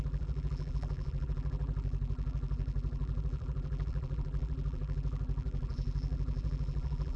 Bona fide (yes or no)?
no